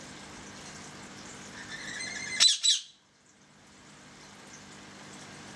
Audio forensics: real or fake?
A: real